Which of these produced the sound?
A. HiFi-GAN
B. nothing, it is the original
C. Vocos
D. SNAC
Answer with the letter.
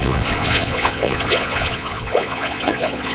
C